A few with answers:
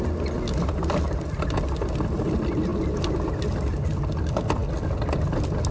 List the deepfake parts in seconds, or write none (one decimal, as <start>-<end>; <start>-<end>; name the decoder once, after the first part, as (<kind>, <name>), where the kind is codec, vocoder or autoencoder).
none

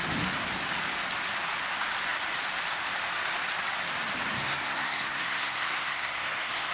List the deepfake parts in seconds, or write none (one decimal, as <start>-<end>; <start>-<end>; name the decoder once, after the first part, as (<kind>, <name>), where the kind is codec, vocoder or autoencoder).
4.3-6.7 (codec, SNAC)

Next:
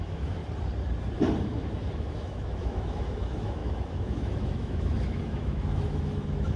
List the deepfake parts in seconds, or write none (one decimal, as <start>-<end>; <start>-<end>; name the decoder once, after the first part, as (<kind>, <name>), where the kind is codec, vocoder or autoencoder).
0.0-0.4 (autoencoder, DAC-VAE); 1.4-6.6

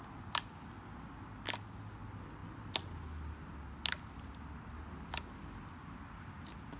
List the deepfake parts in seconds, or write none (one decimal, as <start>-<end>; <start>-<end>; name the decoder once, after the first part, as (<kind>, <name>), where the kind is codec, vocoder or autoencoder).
none

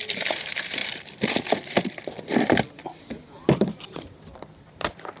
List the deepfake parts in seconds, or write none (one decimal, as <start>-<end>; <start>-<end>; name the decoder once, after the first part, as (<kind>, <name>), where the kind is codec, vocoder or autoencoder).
0.0-0.8 (vocoder, BigVGAN v2); 3.9-5.2